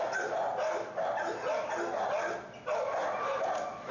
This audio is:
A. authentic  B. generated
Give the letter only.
A